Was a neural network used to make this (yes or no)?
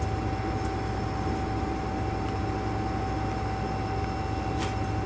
no